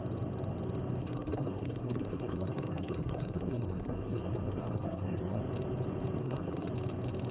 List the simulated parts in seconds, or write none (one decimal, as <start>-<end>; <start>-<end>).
1.0-5.4; 6.2-6.7